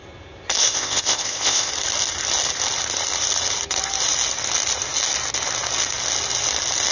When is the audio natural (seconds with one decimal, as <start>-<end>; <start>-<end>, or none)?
0.0-0.6; 1.7-6.9